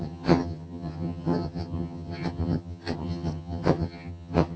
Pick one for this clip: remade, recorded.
remade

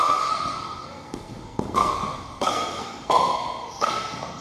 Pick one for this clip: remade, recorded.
remade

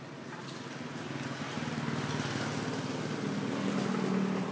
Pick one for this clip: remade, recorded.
recorded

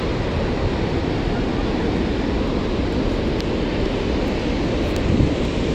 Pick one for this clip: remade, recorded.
recorded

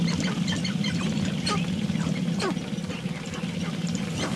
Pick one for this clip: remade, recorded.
recorded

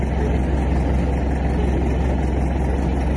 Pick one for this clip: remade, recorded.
recorded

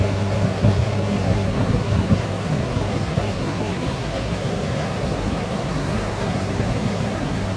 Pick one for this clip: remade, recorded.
remade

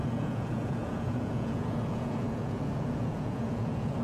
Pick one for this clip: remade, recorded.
remade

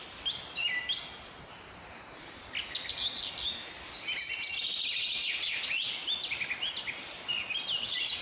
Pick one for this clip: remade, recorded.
recorded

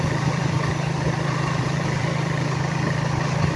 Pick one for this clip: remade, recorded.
remade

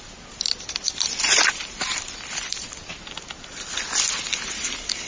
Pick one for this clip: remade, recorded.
remade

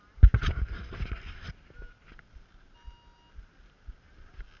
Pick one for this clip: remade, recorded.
recorded